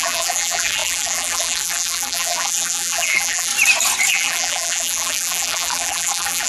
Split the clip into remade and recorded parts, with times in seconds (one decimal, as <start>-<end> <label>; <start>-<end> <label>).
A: 0.0-3.5 remade; 3.5-4.1 recorded; 4.1-6.5 remade